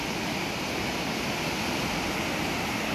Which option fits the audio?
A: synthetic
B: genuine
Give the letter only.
B